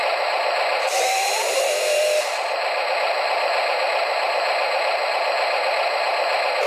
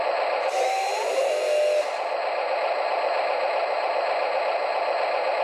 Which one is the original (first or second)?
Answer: second